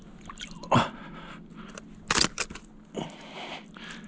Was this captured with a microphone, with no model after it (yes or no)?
yes